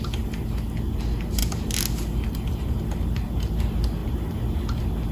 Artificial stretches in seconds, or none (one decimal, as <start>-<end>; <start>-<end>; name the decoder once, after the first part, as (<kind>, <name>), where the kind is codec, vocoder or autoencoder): none